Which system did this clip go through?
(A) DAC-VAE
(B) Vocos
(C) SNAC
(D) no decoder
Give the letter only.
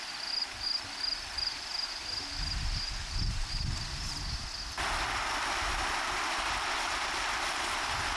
D